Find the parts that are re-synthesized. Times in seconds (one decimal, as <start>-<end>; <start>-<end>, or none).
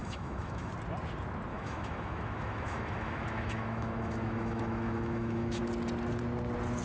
0.0-0.7; 1.5-5.6